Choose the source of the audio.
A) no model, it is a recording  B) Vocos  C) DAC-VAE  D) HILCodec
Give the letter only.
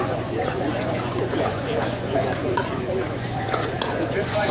B